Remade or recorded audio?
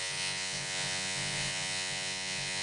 remade